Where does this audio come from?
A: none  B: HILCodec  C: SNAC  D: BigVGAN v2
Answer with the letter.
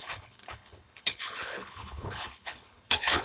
B